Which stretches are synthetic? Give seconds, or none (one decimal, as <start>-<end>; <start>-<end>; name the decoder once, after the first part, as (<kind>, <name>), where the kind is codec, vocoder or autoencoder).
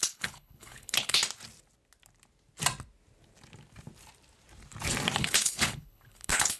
0.0-1.2 (codec, HILCodec); 5.2-6.6